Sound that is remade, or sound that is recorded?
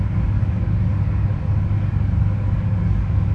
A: remade